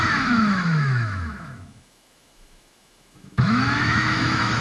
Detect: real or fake fake